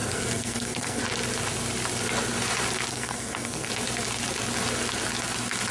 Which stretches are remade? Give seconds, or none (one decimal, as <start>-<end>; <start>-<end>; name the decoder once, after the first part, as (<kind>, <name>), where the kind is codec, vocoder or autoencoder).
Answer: 0.0-1.0 (codec, SNAC); 2.9-3.7